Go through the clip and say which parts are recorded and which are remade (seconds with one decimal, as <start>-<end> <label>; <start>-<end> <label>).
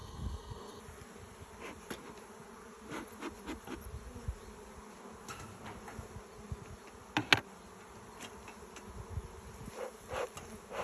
0.0-0.8 remade; 0.8-10.8 recorded